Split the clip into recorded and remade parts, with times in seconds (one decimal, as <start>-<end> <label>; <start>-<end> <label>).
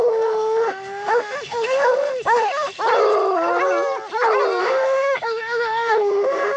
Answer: 0.0-2.7 remade; 2.7-4.6 recorded; 4.6-6.6 remade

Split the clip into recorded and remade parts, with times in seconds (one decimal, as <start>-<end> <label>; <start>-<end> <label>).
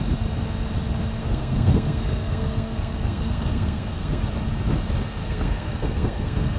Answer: 0.0-1.2 recorded; 1.2-4.3 remade; 4.3-5.2 recorded; 5.2-6.6 remade